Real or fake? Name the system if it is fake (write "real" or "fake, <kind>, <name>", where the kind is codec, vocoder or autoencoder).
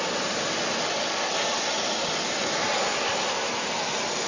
real